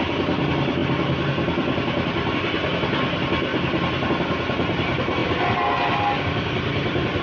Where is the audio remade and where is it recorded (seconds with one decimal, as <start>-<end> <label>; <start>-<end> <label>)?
0.0-7.2 recorded